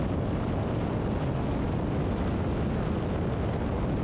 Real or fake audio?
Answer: real